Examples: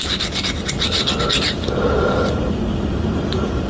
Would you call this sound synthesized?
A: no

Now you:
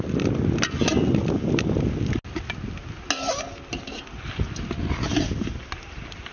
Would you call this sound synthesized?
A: no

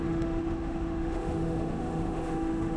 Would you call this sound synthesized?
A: yes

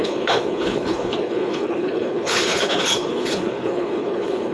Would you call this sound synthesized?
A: yes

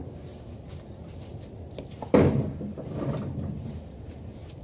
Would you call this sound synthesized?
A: no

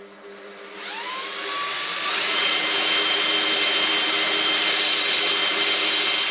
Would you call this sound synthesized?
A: yes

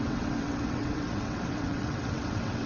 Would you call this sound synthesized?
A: yes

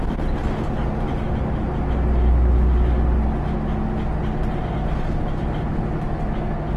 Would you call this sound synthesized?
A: no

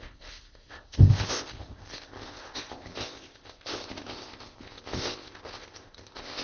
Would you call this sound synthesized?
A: yes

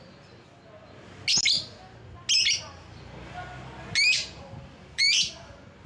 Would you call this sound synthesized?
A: no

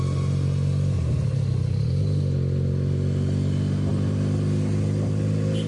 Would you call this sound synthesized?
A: no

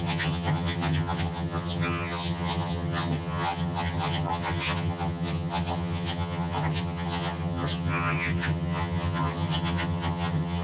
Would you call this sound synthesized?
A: yes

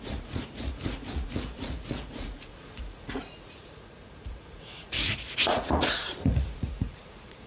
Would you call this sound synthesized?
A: yes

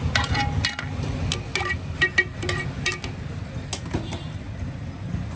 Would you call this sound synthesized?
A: no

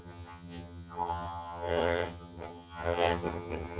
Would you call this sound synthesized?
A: yes